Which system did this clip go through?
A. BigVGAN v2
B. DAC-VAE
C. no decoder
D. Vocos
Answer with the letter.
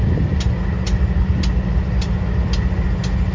C